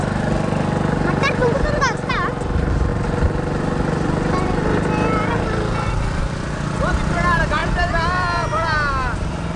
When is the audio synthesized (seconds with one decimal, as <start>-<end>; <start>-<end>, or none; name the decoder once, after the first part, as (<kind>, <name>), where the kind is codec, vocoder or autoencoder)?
1.4-2.1 (vocoder, BigVGAN v2); 7.6-8.9

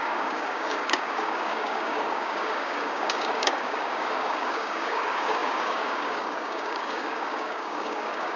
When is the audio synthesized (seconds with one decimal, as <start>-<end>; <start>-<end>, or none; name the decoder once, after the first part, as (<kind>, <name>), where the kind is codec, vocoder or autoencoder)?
0.0-8.4 (codec, DAC)

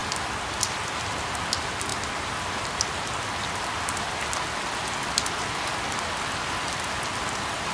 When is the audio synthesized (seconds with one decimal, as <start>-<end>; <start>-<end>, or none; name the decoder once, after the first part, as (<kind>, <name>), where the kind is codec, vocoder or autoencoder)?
none